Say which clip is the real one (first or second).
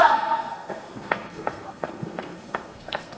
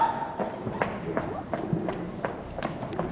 second